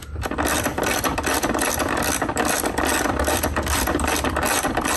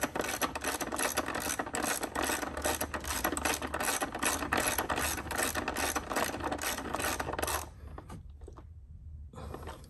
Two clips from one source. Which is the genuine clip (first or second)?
second